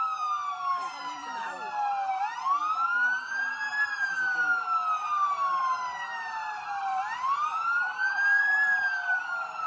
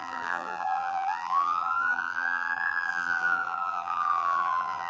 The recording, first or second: first